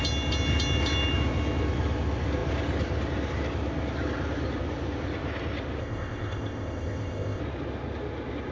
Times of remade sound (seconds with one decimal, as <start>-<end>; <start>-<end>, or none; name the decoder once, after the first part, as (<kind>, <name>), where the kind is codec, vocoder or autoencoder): 5.8-7.4 (codec, ZipCodec)